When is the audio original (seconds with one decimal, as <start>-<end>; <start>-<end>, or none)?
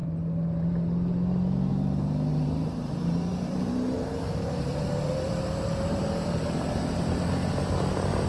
0.0-2.3; 7.3-8.3